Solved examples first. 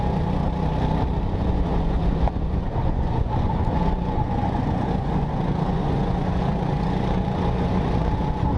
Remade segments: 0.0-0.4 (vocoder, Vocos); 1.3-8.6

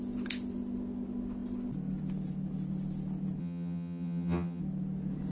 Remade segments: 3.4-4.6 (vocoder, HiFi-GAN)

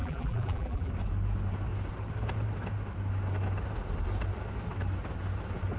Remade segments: 0.0-0.9 (vocoder, BigVGAN v2)

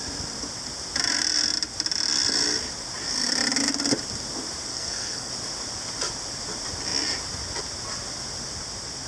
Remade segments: 4.7-5.3 (codec, SNAC)